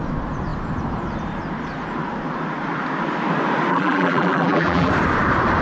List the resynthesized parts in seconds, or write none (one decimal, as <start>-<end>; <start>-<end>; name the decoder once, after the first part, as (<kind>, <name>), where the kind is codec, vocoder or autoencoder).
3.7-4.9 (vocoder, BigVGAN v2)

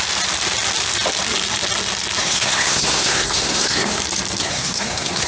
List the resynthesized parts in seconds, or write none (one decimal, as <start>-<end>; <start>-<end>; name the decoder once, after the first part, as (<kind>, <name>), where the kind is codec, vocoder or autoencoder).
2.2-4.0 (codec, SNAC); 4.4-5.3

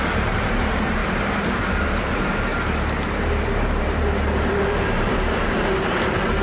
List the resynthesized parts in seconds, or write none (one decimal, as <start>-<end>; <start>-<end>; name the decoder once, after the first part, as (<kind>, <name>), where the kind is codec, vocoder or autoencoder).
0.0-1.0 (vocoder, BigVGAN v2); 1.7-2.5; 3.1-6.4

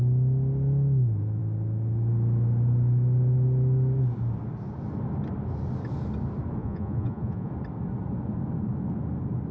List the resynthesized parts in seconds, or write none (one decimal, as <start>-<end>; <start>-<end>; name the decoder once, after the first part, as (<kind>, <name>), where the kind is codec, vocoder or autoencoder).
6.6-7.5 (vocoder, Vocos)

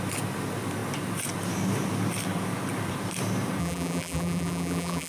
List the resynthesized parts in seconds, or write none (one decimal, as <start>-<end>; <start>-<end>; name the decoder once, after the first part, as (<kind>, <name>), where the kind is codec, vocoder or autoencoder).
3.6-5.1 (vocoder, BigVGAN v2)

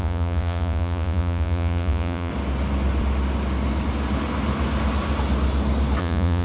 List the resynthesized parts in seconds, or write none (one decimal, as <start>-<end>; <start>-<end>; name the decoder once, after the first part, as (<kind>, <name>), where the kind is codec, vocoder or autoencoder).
0.0-2.3 (vocoder, Vocos); 6.0-6.4

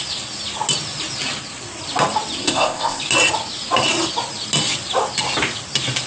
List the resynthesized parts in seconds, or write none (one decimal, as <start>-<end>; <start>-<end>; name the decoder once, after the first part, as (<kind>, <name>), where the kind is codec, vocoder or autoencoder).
2.4-3.0 (codec, ZipCodec)